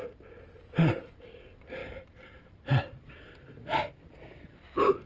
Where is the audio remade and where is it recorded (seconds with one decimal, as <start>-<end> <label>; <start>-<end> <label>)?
0.0-1.8 recorded; 1.8-3.1 remade; 3.1-5.1 recorded